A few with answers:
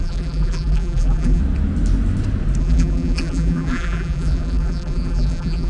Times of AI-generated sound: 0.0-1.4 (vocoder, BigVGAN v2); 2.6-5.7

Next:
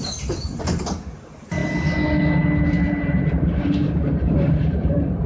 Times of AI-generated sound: 0.0-1.6 (vocoder, BigVGAN v2); 2.7-5.3

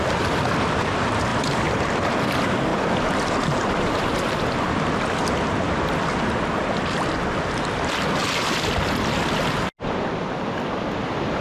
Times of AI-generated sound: 1.3-2.2 (vocoder, BigVGAN v2); 2.7-5.9

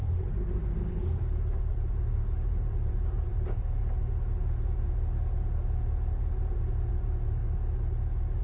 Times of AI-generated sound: 0.0-3.8 (vocoder, BigVGAN v2); 6.9-7.4

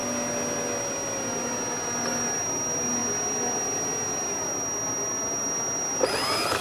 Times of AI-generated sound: none

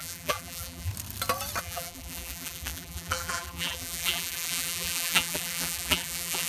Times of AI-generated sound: 0.0-0.9 (vocoder, BigVGAN v2); 1.6-6.5

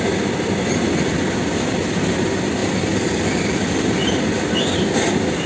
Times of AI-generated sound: 2.6-4.2 (vocoder, BigVGAN v2)